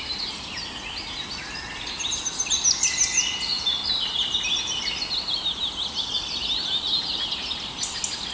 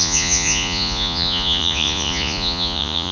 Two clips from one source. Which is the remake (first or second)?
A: second